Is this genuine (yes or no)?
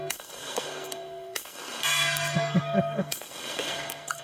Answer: no